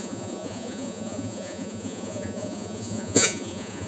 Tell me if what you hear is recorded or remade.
remade